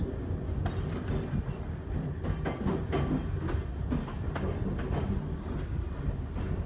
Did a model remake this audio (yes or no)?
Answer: no